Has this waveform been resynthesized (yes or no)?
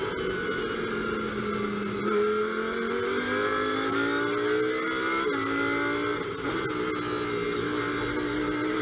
no